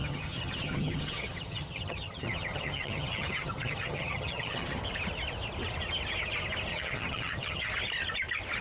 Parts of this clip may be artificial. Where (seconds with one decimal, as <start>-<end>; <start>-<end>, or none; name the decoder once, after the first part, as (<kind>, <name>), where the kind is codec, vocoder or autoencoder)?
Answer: 0.0-4.8 (vocoder, HiFi-GAN); 6.7-7.7